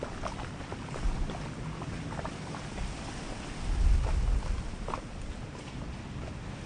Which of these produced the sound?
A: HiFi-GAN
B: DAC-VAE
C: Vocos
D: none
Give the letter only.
D